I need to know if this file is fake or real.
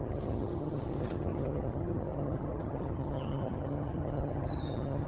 fake